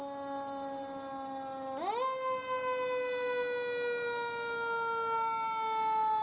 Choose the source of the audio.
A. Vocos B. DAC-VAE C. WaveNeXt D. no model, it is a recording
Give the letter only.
D